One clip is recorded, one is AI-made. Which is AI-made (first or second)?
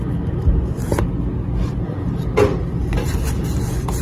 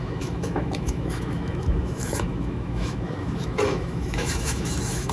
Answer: second